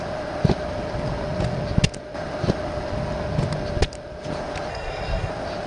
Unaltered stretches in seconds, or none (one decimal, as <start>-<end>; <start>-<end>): 0.0-4.7; 5.3-5.7